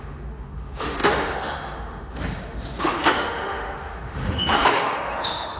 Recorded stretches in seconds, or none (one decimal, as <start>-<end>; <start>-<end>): none